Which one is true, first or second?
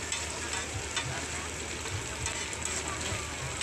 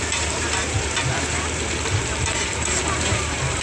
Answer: first